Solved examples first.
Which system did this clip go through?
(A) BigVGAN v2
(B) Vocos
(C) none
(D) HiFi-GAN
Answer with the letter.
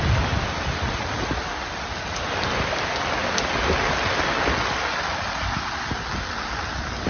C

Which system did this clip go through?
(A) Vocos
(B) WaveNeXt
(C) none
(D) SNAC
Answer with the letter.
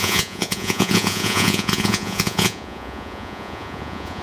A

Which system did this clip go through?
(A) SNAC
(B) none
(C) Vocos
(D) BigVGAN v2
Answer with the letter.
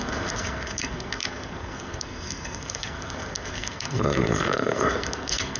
A